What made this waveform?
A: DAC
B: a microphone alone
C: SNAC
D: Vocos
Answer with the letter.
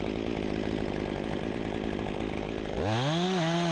B